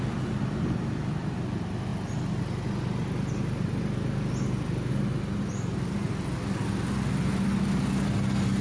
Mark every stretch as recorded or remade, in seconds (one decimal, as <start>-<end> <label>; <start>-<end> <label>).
0.0-8.6 recorded